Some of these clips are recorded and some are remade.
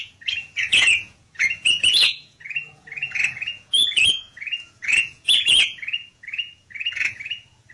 remade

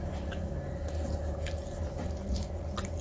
recorded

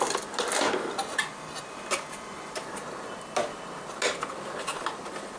recorded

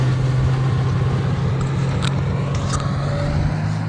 recorded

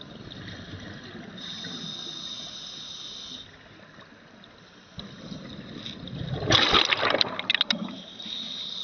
recorded